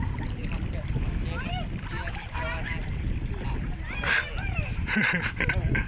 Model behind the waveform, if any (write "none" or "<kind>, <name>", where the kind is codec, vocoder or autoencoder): none